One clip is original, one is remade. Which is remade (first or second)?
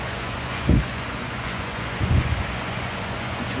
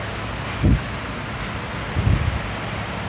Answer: first